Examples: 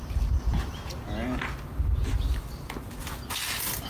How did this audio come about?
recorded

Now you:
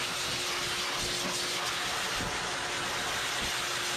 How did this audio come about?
recorded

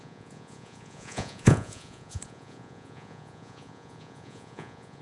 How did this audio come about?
remade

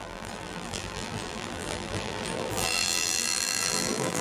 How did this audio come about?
remade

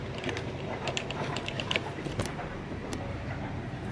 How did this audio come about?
remade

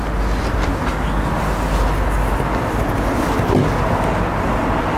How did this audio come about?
recorded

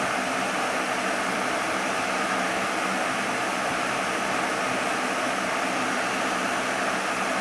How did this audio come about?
recorded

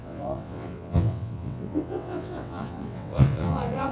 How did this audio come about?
remade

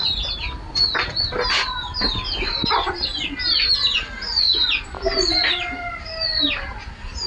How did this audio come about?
recorded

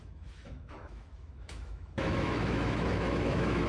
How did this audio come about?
remade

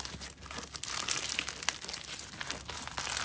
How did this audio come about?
recorded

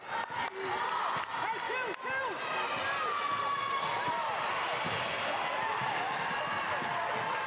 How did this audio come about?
recorded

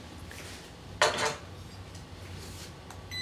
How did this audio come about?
recorded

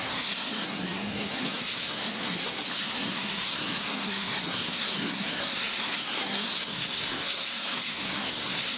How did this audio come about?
remade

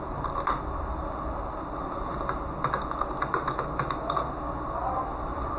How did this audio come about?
recorded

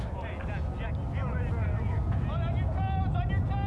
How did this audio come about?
recorded